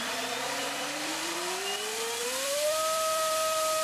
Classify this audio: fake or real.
fake